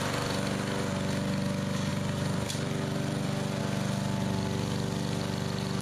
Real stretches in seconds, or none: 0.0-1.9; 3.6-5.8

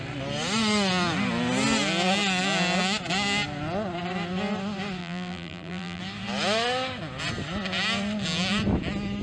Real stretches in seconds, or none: 0.0-5.0; 6.0-9.2

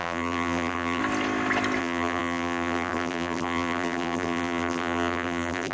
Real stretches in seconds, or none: 1.0-1.8

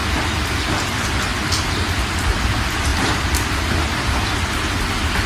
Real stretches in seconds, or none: 2.4-2.9; 4.4-5.3

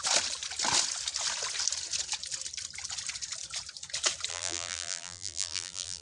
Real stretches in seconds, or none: 0.0-4.3